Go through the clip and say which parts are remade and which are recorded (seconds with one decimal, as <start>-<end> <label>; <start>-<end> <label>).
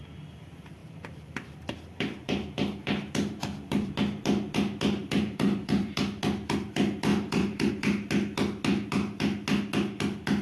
0.0-0.8 recorded; 0.8-3.9 remade; 3.9-5.0 recorded; 5.0-6.2 remade; 6.2-7.1 recorded; 7.1-7.7 remade; 7.7-10.4 recorded